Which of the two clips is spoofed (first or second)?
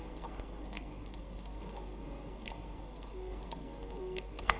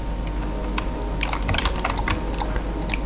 first